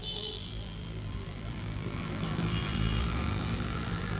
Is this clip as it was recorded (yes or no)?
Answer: no